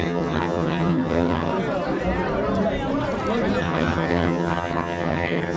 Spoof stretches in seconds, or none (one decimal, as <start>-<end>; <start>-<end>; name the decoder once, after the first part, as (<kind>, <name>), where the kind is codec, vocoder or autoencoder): 0.0-1.5 (vocoder, HiFi-GAN); 3.6-5.6